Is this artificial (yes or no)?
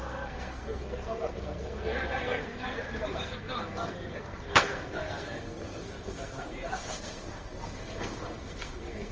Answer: yes